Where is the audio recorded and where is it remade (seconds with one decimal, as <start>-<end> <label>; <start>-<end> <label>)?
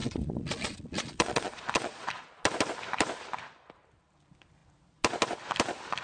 0.0-2.1 remade; 2.1-6.0 recorded